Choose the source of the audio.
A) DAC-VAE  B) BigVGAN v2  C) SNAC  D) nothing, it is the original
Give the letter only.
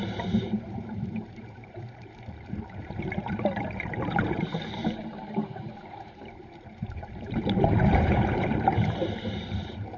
B